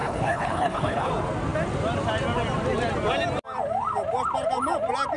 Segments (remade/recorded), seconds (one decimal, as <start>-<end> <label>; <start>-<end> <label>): 0.0-1.1 remade; 1.1-5.2 recorded